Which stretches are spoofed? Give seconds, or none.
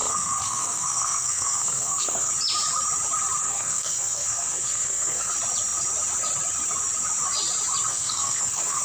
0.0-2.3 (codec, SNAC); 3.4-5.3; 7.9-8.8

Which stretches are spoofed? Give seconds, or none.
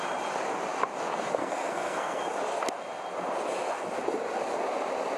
1.4-2.2 (codec, SNAC)